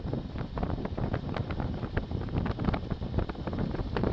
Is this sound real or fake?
fake